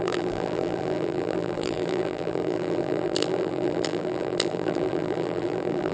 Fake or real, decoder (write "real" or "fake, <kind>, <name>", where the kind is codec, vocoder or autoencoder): fake, vocoder, BigVGAN v2